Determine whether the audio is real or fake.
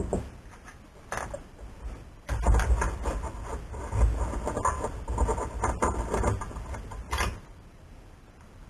real